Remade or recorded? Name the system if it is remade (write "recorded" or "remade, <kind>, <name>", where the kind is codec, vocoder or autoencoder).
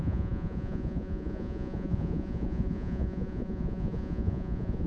remade, vocoder, Vocos